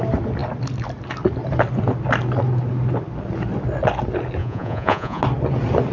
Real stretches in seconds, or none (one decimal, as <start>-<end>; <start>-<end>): 0.0-4.4; 5.2-5.9